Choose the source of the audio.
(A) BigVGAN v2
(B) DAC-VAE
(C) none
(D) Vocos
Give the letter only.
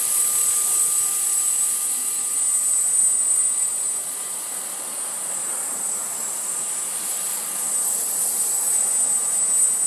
A